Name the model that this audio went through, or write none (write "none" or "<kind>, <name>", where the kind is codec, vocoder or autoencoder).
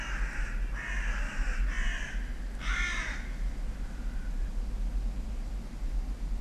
none